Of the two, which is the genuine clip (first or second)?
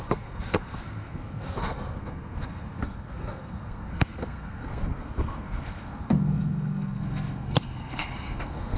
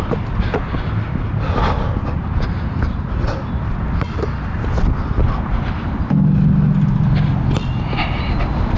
second